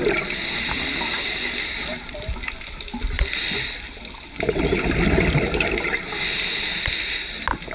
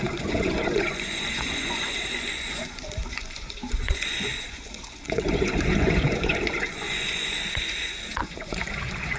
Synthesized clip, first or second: second